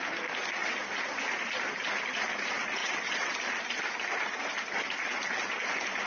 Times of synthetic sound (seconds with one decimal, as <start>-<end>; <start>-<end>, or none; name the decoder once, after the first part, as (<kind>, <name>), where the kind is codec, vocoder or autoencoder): 2.8-3.3 (vocoder, WaveNeXt)

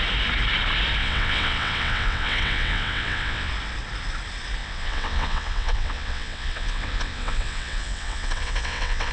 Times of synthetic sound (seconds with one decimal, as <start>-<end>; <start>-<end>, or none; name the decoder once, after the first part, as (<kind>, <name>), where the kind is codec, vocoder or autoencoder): 1.0-3.5 (vocoder, WaveNeXt); 4.6-9.1

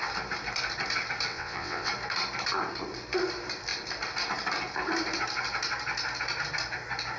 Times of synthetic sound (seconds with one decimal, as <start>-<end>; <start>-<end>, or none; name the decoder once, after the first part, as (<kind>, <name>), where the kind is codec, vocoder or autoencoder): 1.3-1.9 (vocoder, WaveNeXt)